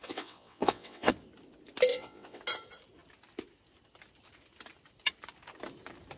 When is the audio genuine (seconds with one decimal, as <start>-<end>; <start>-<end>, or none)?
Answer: 1.1-1.9; 2.4-6.2